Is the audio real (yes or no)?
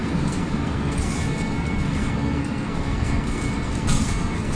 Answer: no